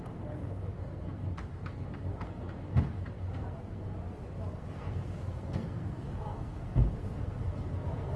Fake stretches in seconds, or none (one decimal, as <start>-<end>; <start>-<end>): 0.0-3.9; 4.5-8.2